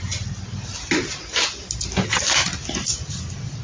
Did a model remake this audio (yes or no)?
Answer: no